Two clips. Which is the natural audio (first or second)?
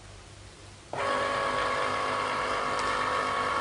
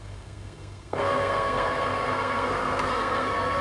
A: first